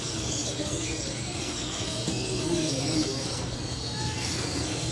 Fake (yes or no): yes